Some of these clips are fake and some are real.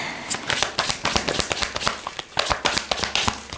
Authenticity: real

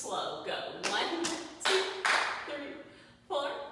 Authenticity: real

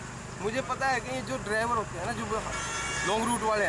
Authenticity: real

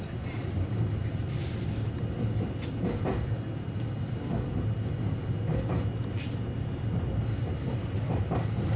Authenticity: real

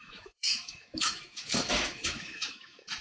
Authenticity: fake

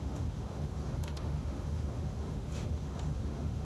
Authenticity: fake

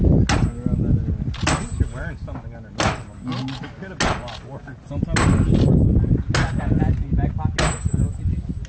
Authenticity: real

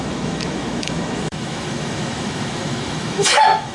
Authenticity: fake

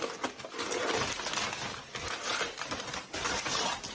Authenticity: real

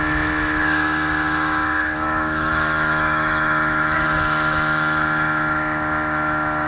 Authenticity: fake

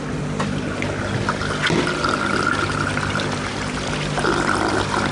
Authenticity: real